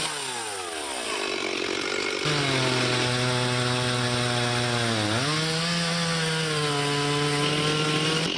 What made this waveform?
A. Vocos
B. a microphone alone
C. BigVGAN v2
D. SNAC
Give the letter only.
B